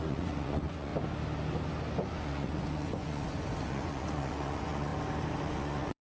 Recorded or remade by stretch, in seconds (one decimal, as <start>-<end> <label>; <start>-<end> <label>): 0.0-0.9 remade; 0.9-2.2 recorded; 2.2-4.9 remade; 4.9-5.4 recorded; 5.4-6.1 remade